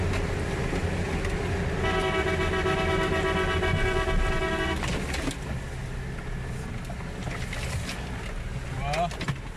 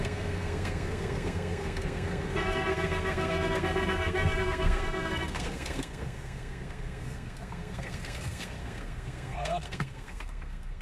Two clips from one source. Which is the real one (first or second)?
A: first